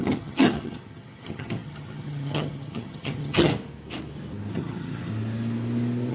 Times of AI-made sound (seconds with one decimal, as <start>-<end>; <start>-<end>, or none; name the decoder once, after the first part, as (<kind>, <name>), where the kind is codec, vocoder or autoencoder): 0.0-3.5 (vocoder, HiFi-GAN); 4.5-5.1